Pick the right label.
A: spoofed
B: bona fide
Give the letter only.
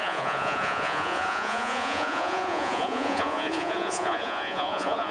A